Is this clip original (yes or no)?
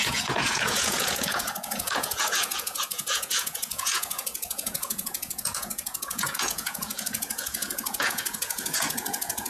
no